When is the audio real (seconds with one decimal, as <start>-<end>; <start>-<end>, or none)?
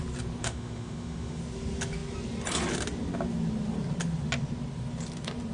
0.0-0.4; 1.4-5.5